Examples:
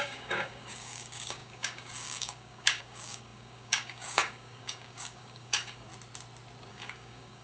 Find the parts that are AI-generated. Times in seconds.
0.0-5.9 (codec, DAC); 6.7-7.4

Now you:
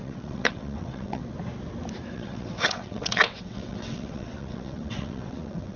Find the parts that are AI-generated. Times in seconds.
0.0-1.2 (vocoder, WaveNeXt); 2.1-5.8